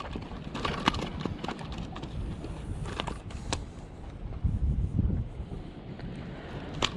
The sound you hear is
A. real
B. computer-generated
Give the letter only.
A